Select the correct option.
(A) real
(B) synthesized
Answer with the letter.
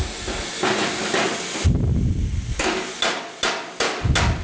A